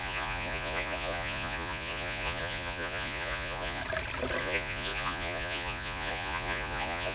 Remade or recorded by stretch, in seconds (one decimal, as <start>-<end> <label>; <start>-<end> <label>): 0.0-3.8 remade; 3.8-4.4 recorded; 4.4-7.1 remade